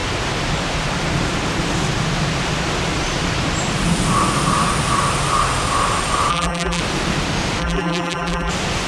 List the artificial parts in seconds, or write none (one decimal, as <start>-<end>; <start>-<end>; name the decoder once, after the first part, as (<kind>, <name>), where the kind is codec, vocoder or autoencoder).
6.3-6.8 (vocoder, BigVGAN v2); 7.6-8.5